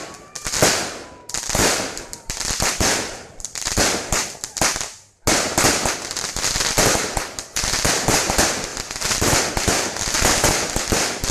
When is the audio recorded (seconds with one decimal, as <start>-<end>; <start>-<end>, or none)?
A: 0.0-1.6; 3.8-8.7; 9.5-11.3